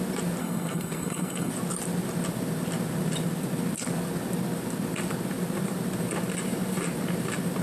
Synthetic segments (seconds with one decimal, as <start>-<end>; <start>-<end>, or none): 0.4-1.5